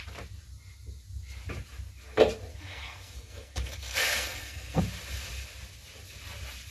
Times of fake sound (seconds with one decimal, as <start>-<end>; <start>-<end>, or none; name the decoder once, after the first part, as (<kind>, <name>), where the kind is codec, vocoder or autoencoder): 2.5-4.8 (codec, SNAC)